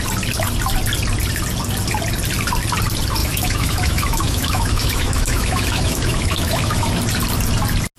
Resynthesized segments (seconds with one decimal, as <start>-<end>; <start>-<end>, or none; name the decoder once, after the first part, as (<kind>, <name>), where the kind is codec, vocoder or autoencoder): 3.2-6.9 (autoencoder, DAC-VAE)